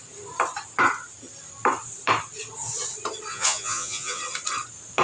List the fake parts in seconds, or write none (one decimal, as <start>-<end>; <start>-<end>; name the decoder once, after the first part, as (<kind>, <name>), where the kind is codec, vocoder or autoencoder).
3.3-4.2 (vocoder, Vocos)